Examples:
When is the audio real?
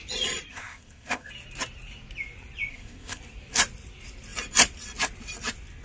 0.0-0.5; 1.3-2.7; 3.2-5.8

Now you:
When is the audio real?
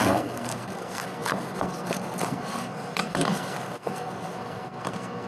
none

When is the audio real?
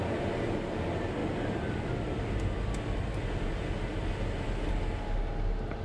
0.0-5.8